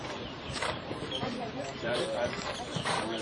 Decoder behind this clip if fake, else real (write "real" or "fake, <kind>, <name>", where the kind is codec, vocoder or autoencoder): fake, vocoder, BigVGAN v2